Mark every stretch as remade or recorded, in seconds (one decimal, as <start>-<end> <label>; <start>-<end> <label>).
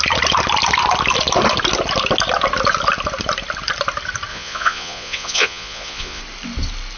0.0-4.3 recorded; 4.3-6.2 remade; 6.2-7.0 recorded